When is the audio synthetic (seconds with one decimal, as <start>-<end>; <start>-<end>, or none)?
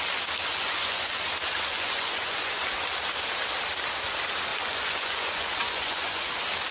0.5-1.1; 1.7-2.5; 4.5-6.3